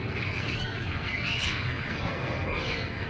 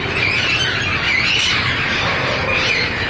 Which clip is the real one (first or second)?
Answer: second